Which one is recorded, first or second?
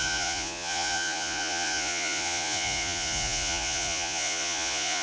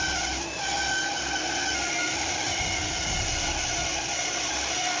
second